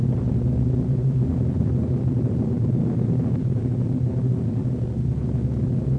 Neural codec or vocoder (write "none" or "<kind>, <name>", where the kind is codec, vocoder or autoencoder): none